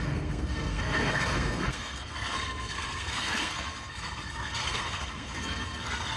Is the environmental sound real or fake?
fake